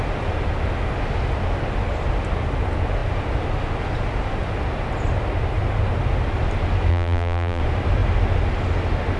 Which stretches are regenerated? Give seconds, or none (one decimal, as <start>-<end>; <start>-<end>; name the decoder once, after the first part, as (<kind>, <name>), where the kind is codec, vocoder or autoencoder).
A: 6.9-7.6 (vocoder, BigVGAN v2)